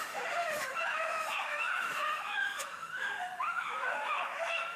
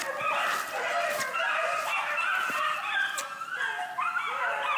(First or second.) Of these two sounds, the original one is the second